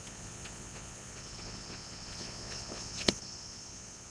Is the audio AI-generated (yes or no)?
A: yes